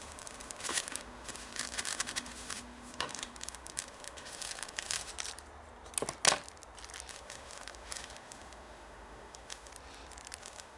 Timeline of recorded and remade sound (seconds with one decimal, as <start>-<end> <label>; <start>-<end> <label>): 0.0-5.1 remade; 5.1-7.1 recorded; 7.1-9.7 remade; 9.7-10.4 recorded; 10.4-10.8 remade